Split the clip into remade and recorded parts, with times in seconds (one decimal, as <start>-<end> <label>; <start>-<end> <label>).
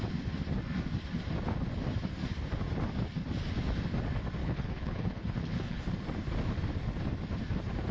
0.0-4.4 recorded; 4.4-5.8 remade; 5.8-7.9 recorded